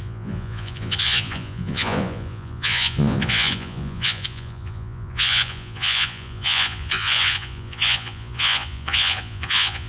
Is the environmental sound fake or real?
fake